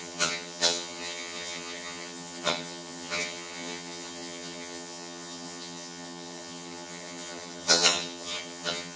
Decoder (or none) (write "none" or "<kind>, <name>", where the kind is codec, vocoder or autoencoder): vocoder, HiFi-GAN